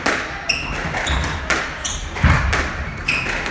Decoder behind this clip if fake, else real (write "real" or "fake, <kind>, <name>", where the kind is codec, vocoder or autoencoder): real